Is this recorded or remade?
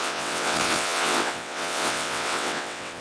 remade